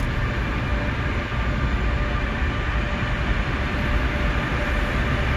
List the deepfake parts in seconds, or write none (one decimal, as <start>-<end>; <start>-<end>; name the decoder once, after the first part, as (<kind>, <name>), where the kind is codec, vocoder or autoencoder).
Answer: none